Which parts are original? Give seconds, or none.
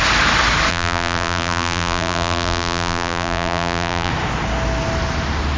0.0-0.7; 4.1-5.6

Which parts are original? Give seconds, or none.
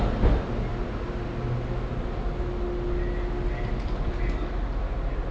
0.7-3.7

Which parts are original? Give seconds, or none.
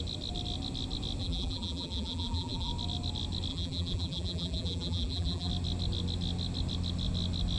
0.0-1.2; 2.7-3.5; 5.5-7.6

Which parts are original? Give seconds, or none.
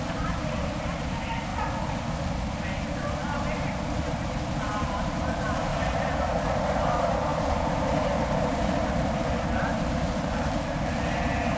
1.5-3.3; 5.7-6.6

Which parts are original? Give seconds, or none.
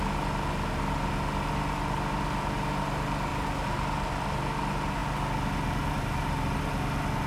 0.0-7.3